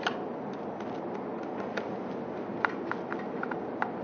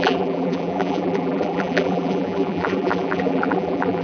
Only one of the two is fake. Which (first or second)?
second